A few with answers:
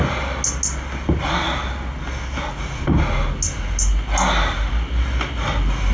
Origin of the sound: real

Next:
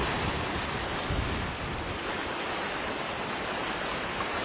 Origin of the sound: real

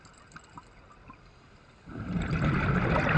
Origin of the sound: real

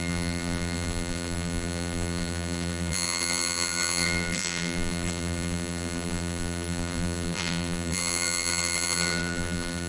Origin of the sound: fake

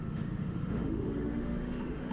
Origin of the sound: fake